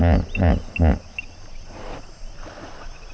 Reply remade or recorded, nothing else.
recorded